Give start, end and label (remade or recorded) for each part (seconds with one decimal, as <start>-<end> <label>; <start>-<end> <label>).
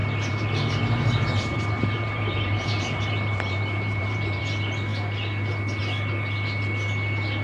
0.0-4.4 remade; 4.4-7.4 recorded